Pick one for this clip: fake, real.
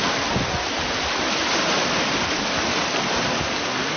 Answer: real